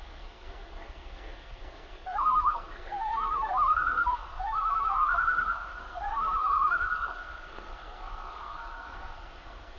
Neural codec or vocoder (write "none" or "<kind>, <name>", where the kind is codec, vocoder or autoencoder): codec, SNAC